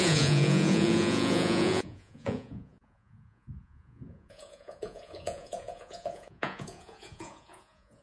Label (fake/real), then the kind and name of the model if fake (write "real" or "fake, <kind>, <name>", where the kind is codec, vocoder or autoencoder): fake, vocoder, Vocos